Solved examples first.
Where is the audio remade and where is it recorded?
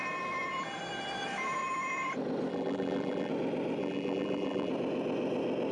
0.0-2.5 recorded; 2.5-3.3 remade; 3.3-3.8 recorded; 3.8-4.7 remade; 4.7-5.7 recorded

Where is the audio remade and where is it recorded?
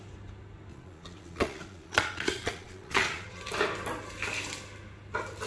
0.0-0.7 recorded; 0.7-3.4 remade; 3.4-5.5 recorded